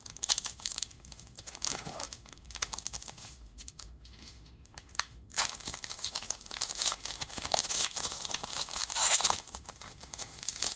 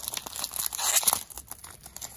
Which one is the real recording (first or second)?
second